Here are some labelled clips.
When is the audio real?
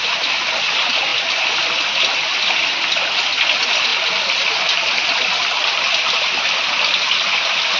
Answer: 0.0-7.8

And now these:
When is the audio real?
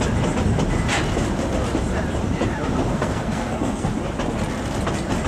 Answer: 0.0-2.9; 3.9-5.3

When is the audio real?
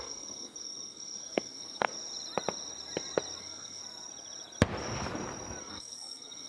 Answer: 1.9-3.4; 3.8-5.6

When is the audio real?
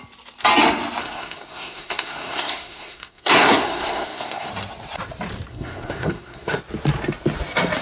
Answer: 0.0-1.0; 4.5-5.5; 6.6-7.8